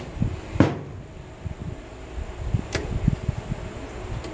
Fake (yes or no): no